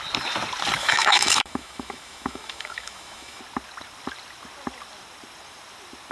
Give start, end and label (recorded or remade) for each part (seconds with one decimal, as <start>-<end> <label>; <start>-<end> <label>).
0.0-0.8 recorded; 0.8-3.4 remade; 3.4-6.1 recorded